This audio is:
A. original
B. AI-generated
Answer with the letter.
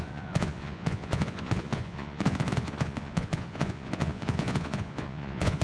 B